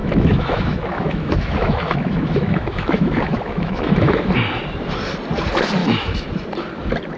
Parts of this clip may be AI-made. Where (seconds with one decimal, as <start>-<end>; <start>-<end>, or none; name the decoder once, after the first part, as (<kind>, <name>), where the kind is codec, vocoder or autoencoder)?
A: 0.0-4.3 (autoencoder, DAC-VAE); 5.8-6.3